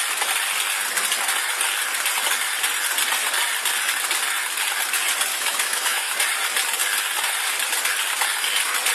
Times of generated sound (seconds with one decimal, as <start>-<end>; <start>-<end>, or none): 5.3-6.1